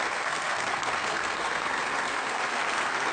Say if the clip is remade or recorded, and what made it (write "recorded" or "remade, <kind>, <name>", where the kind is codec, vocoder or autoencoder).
remade, codec, SNAC